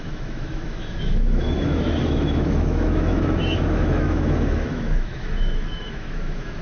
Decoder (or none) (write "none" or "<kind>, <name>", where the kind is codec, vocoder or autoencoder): autoencoder, DAC-VAE